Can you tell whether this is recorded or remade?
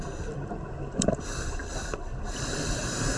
remade